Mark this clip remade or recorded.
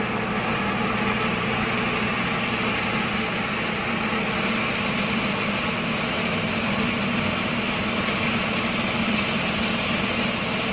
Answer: recorded